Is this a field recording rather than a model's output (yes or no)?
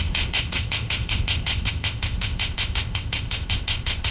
no